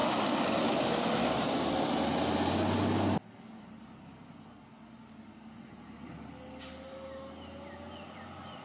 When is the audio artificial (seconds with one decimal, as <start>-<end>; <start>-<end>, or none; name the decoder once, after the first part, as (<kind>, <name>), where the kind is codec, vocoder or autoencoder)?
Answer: none